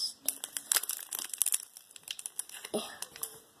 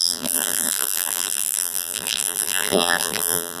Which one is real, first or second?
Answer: first